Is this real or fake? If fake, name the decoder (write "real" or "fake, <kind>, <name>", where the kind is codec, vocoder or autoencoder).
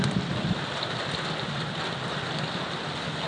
real